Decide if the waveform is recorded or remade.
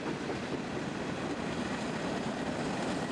recorded